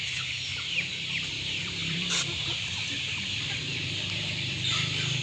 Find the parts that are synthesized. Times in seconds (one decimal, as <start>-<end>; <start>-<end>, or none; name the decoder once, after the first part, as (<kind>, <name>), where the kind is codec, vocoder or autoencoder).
0.0-0.5 (vocoder, BigVGAN v2); 1.3-5.2